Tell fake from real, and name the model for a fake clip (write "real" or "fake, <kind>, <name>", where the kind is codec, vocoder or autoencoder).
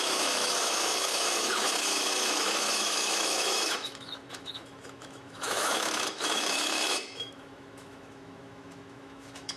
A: fake, autoencoder, DAC-VAE